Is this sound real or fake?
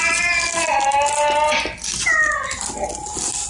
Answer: real